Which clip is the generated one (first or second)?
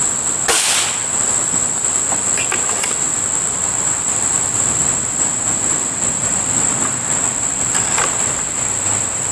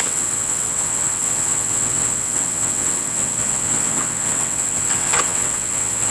second